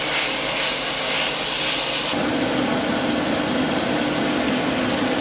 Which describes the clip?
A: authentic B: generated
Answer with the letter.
A